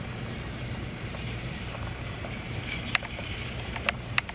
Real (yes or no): no